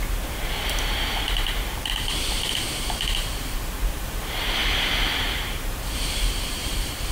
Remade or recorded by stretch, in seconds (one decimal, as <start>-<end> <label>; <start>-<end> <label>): 0.0-4.6 remade; 4.6-5.2 recorded; 5.2-7.1 remade